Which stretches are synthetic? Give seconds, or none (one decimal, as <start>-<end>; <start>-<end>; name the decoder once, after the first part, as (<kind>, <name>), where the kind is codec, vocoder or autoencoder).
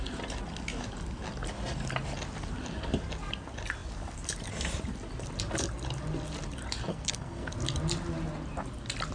6.9-7.5 (codec, SNAC)